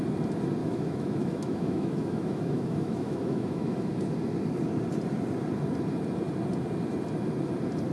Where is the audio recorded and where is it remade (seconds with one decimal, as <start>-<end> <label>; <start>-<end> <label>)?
0.0-0.6 recorded; 0.6-3.9 remade; 3.9-7.9 recorded